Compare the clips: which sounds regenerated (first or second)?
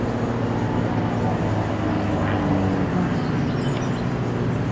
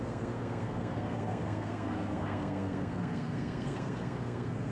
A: second